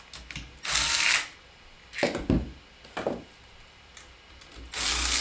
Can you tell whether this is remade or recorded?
recorded